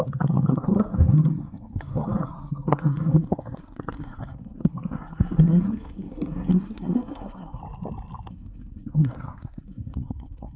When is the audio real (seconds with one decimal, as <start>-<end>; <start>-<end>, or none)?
7.6-8.3